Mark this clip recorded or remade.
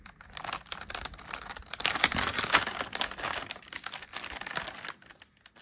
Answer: recorded